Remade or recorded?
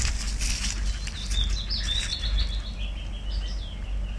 recorded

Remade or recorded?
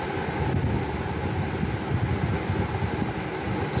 recorded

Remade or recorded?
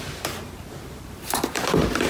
remade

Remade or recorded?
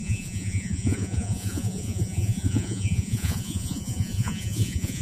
remade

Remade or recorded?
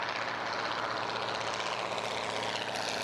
recorded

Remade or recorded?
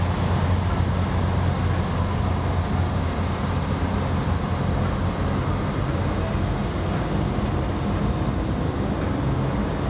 recorded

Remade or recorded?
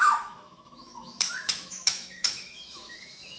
remade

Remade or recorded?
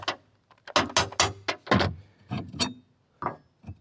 recorded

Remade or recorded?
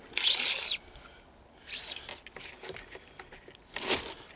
recorded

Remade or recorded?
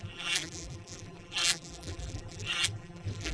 remade